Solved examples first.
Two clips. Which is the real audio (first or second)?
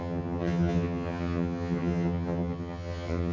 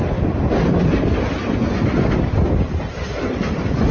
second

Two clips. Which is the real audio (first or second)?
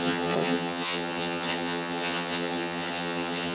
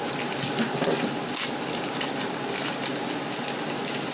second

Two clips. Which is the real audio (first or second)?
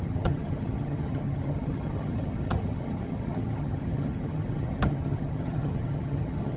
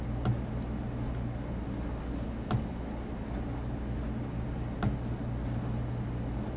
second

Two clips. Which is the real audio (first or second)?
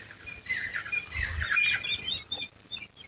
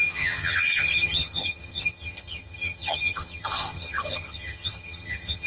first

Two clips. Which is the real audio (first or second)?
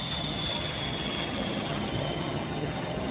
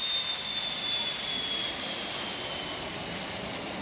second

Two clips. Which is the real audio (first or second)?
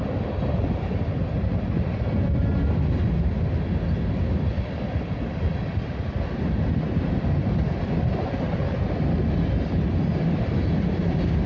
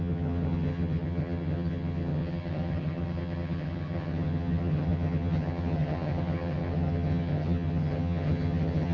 first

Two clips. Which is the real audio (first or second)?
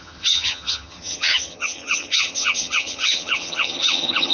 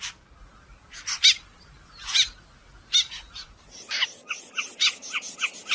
second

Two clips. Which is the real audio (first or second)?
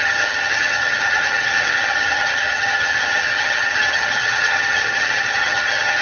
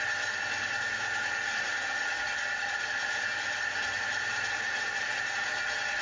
second